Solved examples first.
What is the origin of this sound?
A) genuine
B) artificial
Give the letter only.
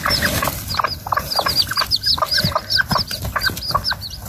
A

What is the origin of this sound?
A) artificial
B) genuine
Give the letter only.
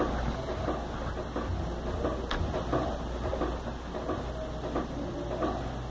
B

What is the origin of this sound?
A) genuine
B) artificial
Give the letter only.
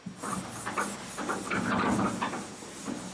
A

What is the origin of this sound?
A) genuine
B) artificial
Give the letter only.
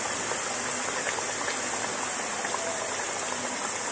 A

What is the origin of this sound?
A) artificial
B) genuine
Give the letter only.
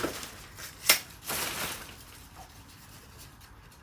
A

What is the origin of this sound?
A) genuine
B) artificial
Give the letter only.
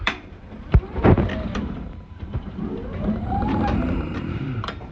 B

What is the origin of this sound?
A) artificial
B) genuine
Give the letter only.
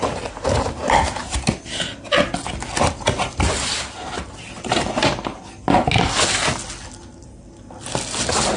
B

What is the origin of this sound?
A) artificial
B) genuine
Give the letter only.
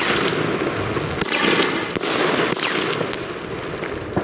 B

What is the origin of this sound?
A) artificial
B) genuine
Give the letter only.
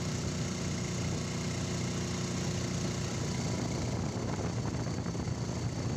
B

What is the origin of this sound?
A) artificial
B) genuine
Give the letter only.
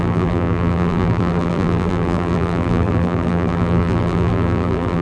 A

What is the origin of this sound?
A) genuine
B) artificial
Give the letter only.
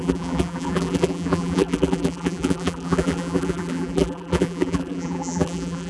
B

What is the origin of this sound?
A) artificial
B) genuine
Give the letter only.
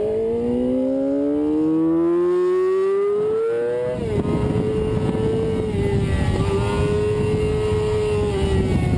B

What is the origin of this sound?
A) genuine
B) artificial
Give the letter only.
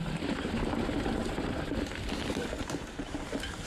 B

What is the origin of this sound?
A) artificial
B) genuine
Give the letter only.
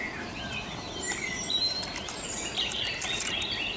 B